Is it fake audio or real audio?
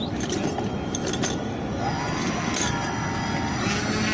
real